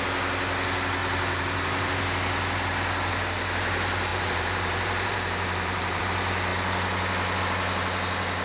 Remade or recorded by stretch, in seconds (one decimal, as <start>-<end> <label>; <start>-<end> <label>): 0.0-1.0 recorded; 1.0-2.0 remade; 2.0-4.1 recorded; 4.1-6.0 remade; 6.0-8.4 recorded